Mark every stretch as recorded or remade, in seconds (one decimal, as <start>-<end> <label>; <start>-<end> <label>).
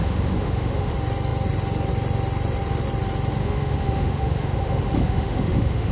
0.0-0.9 remade; 0.9-3.4 recorded; 3.4-5.9 remade